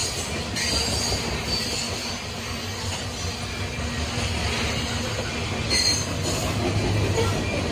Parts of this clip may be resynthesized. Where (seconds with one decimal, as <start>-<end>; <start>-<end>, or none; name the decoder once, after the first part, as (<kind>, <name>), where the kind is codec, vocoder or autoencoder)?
none